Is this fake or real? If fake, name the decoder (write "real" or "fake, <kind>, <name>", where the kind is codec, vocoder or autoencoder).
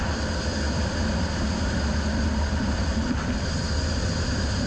real